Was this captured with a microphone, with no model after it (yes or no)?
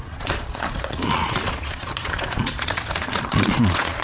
no